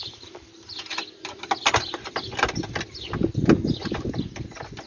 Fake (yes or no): no